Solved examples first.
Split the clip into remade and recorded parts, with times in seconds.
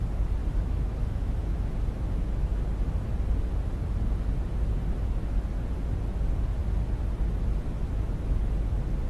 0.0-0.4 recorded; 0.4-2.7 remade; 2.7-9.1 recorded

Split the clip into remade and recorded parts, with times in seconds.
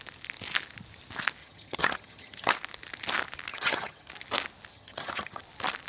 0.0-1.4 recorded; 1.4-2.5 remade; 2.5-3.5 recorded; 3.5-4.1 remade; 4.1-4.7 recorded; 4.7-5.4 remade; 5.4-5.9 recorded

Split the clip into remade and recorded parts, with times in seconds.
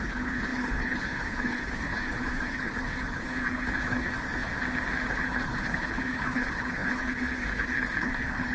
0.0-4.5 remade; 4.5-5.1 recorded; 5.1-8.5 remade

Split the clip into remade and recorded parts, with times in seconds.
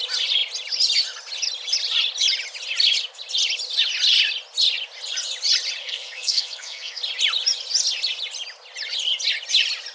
0.0-5.8 recorded; 5.8-7.0 remade; 7.0-9.9 recorded